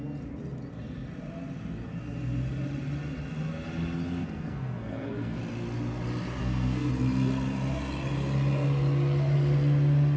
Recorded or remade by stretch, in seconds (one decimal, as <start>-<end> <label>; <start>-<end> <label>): 0.0-4.2 recorded; 4.2-5.4 remade; 5.4-6.4 recorded; 6.4-6.9 remade; 6.9-10.2 recorded